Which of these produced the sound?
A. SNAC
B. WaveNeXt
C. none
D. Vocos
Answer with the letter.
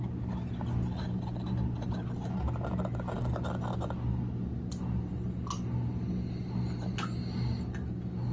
C